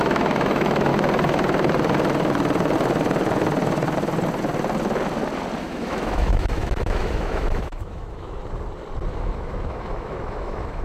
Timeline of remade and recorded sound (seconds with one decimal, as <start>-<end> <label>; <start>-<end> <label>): 0.0-0.9 remade; 0.9-5.6 recorded; 5.6-8.4 remade; 8.4-9.1 recorded; 9.1-10.8 remade